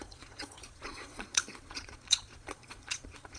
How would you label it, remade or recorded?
remade